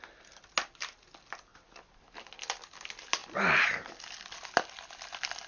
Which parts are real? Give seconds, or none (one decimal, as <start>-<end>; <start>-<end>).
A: 0.0-5.5